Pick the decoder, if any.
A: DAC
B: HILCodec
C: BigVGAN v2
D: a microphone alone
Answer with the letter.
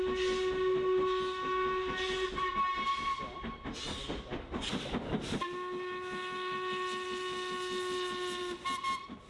D